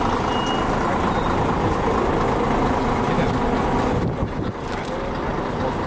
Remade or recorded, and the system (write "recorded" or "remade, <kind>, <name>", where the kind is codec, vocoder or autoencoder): recorded